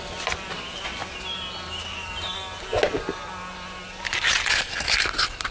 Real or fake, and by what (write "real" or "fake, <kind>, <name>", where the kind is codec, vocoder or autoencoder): real